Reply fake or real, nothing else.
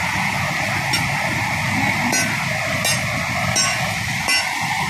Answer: real